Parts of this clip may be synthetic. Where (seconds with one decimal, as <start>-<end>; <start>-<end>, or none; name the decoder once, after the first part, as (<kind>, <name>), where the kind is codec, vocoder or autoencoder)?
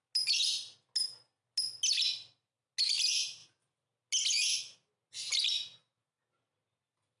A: none